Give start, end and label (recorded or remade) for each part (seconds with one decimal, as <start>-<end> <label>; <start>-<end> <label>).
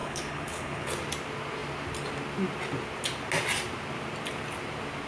0.0-0.9 remade; 0.9-5.1 recorded